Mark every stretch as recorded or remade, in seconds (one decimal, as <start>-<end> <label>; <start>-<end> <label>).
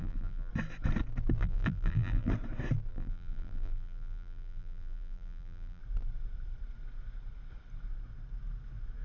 0.0-0.5 remade; 0.5-1.4 recorded; 1.4-2.3 remade; 2.3-2.9 recorded; 2.9-5.8 remade; 5.8-9.0 recorded